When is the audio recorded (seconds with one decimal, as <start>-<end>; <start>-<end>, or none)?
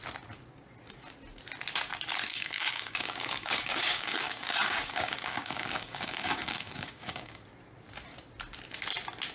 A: 0.0-2.3; 7.4-9.3